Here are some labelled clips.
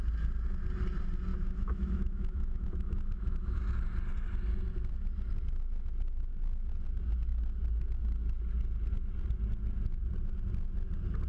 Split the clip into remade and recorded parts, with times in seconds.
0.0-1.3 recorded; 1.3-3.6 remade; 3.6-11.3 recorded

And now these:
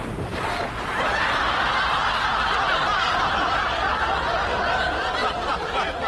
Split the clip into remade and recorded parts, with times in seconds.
0.0-6.1 recorded

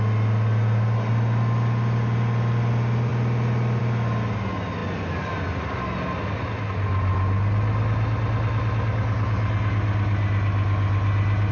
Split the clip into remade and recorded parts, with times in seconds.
0.0-11.5 recorded

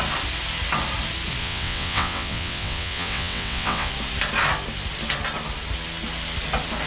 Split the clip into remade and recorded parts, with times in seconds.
0.0-1.4 recorded; 1.4-3.9 remade; 3.9-6.9 recorded

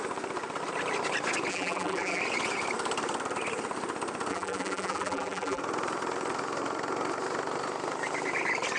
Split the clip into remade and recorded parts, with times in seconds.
0.0-1.5 recorded; 1.5-2.2 remade; 2.2-4.3 recorded; 4.3-5.6 remade; 5.6-8.8 recorded